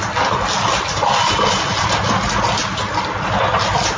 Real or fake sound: real